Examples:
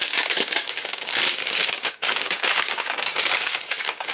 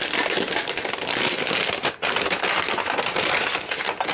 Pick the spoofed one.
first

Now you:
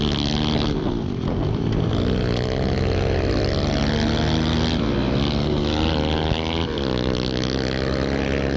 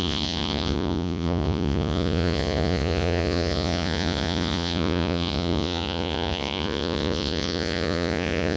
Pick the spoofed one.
second